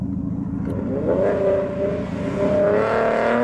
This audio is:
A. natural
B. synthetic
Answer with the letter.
A